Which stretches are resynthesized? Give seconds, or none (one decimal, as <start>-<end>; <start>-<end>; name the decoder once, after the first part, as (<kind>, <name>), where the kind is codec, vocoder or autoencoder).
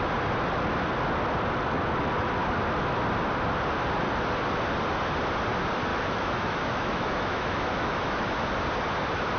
5.9-8.3 (autoencoder, DAC-VAE)